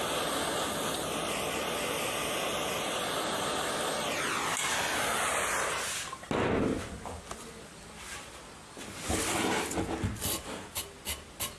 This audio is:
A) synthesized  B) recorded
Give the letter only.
B